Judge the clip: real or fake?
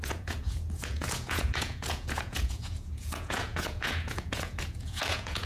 fake